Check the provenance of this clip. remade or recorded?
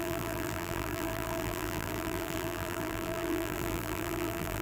remade